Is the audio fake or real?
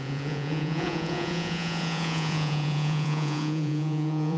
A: fake